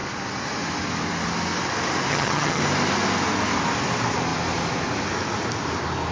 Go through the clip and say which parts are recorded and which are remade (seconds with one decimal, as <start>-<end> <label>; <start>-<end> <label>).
0.0-2.1 recorded; 2.1-2.6 remade; 2.6-6.1 recorded